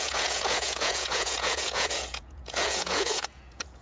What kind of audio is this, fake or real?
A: fake